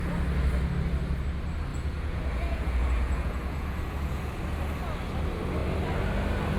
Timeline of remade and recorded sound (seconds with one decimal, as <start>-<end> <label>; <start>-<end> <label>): 0.0-1.7 recorded; 1.7-4.4 remade; 4.4-6.6 recorded